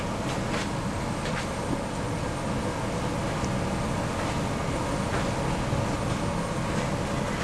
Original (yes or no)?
yes